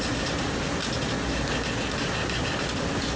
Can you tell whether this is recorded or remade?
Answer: recorded